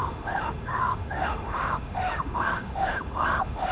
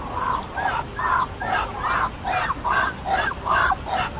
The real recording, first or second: second